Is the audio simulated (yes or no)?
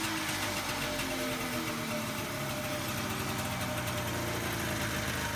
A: no